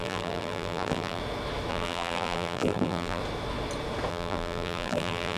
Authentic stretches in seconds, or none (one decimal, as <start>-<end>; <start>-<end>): 1.2-1.7; 3.2-4.1